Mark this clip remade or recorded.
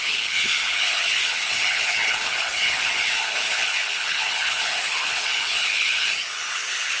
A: remade